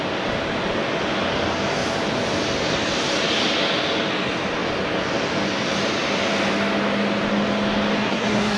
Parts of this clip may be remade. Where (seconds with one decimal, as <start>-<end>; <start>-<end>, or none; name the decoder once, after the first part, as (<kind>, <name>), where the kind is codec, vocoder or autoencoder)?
8.0-8.6 (codec, SNAC)